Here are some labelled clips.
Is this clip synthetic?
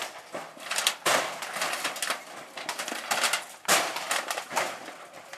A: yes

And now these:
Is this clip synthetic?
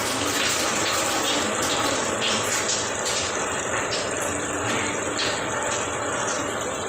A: no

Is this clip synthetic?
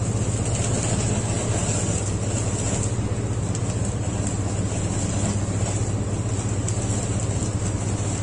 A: no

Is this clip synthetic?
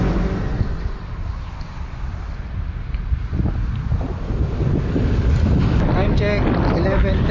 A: no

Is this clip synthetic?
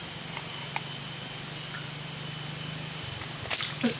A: no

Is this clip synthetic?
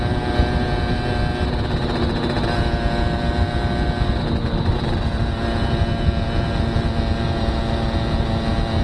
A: no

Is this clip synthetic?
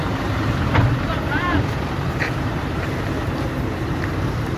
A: yes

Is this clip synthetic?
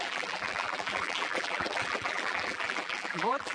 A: yes